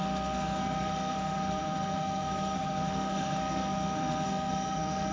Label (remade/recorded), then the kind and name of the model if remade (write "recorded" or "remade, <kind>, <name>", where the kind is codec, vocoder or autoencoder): remade, codec, SNAC